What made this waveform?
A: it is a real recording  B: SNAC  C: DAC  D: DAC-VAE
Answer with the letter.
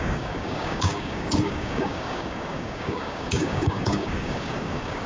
C